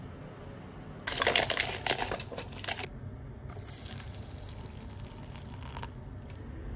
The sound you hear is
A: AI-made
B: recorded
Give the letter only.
B